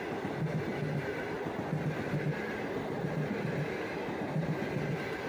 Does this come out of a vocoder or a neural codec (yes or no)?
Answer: no